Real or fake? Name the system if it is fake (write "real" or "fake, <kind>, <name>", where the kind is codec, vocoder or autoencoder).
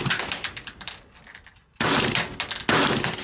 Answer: real